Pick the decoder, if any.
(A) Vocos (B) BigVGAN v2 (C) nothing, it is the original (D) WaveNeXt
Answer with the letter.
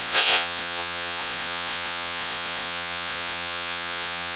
A